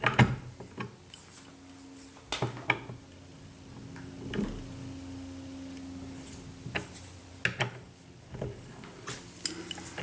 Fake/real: real